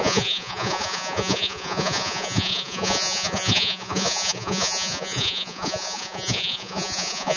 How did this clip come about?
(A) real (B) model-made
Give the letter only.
B